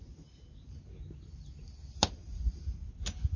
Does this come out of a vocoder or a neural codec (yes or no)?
no